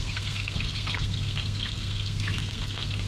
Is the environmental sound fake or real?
fake